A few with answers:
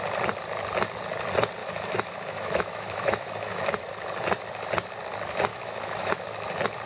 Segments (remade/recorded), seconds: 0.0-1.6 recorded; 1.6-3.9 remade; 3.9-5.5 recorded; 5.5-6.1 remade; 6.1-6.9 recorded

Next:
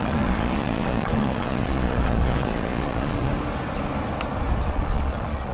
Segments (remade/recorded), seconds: 0.0-3.3 remade; 3.3-4.6 recorded; 4.6-5.5 remade

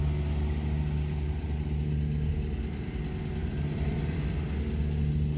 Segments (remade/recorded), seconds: 0.0-3.4 recorded; 3.4-4.4 remade; 4.4-5.4 recorded

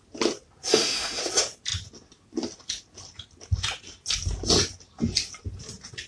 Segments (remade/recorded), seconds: 0.0-0.7 recorded; 0.7-1.2 remade; 1.2-6.1 recorded